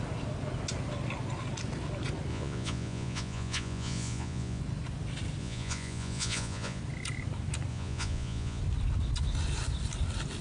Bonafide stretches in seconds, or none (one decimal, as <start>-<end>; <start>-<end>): 0.0-2.3; 4.6-5.4; 6.8-7.7; 8.6-10.4